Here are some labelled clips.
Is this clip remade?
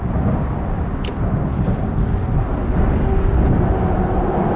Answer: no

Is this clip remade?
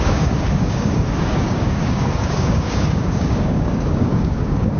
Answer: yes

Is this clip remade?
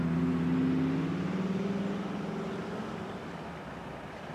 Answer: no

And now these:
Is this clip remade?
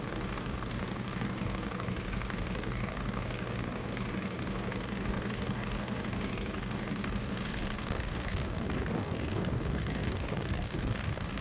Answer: yes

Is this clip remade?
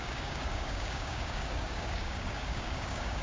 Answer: yes